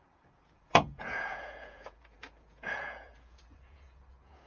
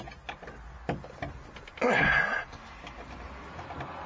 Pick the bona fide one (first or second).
second